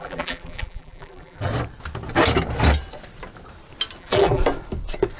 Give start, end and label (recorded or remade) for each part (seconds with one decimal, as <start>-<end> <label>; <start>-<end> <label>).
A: 0.0-1.5 remade; 1.5-4.0 recorded; 4.0-4.4 remade; 4.4-5.2 recorded

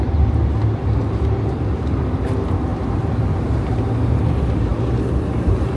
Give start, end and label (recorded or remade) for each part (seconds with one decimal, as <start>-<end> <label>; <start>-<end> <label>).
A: 0.0-5.8 recorded

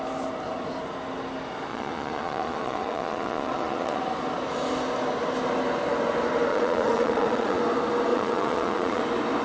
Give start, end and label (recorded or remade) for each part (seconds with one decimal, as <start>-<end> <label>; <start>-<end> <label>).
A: 0.0-1.7 recorded; 1.7-4.0 remade; 4.0-6.5 recorded; 6.5-7.6 remade; 7.6-8.1 recorded; 8.1-9.0 remade; 9.0-9.4 recorded